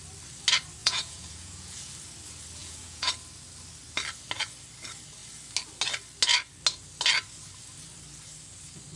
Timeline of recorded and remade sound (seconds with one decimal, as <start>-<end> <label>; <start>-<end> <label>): 0.0-0.8 recorded; 0.8-1.9 remade; 1.9-2.6 recorded; 2.6-3.1 remade; 3.1-9.0 recorded